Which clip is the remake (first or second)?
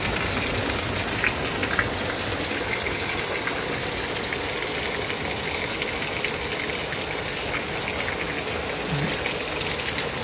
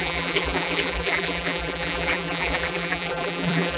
second